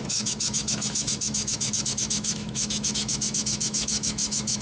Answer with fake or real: fake